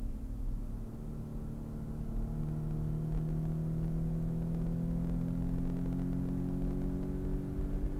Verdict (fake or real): real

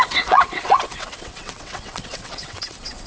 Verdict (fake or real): fake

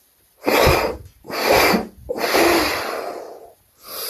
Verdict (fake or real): real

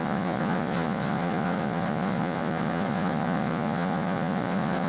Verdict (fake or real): fake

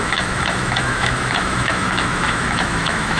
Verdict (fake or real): fake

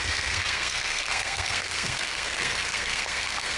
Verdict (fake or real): fake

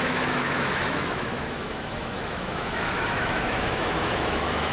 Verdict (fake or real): fake